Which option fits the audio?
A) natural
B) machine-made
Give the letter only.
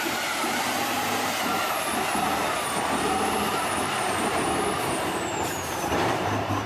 B